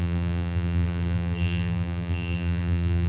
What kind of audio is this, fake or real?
fake